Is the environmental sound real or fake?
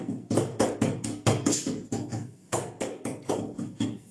fake